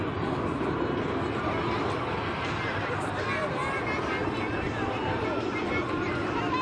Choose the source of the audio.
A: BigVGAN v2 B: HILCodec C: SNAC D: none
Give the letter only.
D